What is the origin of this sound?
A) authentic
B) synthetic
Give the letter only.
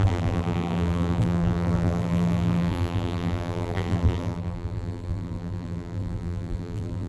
B